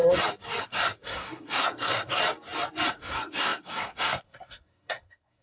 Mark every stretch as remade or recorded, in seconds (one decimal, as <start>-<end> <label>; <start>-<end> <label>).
0.0-0.6 recorded; 0.6-2.2 remade; 2.2-2.9 recorded; 2.9-5.4 remade